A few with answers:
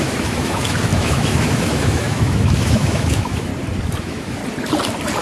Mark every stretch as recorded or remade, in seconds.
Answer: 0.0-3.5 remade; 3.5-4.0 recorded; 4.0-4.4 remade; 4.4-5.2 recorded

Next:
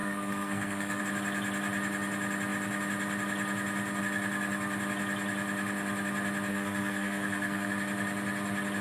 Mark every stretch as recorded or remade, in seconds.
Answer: 0.0-1.0 remade; 1.0-6.5 recorded; 6.5-7.7 remade; 7.7-8.8 recorded